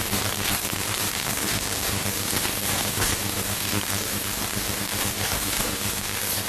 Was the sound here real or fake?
fake